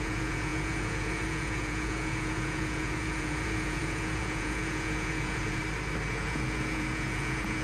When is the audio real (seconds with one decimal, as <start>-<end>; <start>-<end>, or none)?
5.6-6.1